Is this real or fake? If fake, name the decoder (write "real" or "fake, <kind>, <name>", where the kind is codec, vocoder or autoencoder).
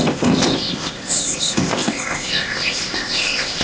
fake, codec, ZipCodec